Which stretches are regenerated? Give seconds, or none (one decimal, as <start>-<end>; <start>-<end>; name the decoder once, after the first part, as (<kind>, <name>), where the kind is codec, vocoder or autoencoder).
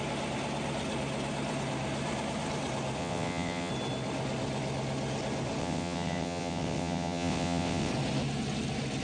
3.0-3.7 (vocoder, WaveNeXt); 5.6-7.9